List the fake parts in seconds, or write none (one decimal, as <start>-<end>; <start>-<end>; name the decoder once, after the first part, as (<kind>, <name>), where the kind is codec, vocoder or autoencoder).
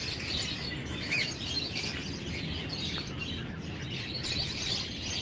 0.8-1.3 (autoencoder, DAC-VAE)